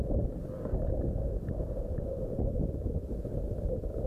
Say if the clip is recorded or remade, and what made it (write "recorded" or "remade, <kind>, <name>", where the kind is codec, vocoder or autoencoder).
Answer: recorded